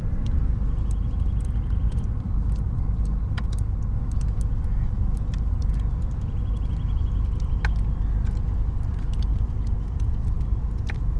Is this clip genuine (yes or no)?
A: yes